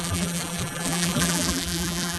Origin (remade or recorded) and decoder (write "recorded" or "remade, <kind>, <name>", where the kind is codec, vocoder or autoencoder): remade, vocoder, BigVGAN v2